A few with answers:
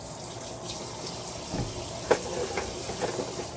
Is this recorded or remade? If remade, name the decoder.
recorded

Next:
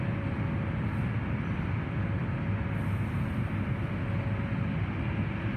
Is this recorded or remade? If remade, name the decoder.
recorded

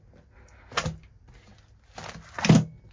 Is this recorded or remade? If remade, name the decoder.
recorded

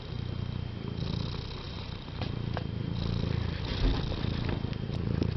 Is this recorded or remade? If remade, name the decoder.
remade, vocoder, BigVGAN v2